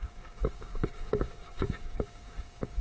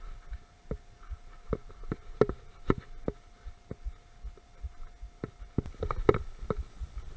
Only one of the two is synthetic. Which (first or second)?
first